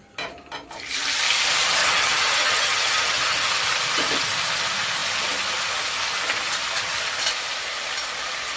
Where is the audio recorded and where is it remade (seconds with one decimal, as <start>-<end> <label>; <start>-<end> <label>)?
0.0-1.8 recorded; 1.8-3.5 remade; 3.5-8.6 recorded